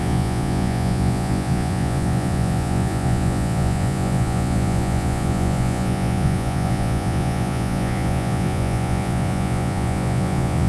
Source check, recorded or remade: remade